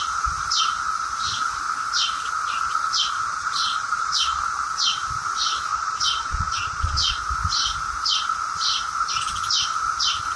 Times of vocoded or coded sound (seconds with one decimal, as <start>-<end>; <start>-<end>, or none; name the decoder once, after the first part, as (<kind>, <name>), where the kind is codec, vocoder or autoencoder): 3.3-4.4 (vocoder, Vocos); 5.7-7.2